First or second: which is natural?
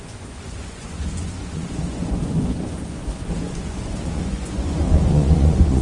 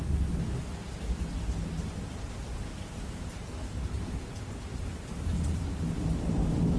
second